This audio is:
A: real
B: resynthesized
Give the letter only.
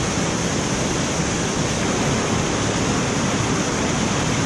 A